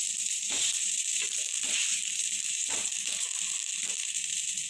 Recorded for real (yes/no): no